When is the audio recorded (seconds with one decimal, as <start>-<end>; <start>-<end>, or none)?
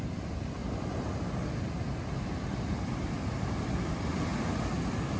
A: 0.0-5.2